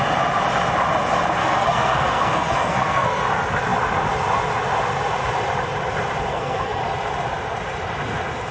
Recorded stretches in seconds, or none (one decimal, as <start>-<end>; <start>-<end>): 0.0-1.4; 3.2-6.3; 6.8-8.5